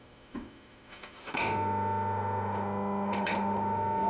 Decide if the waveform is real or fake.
fake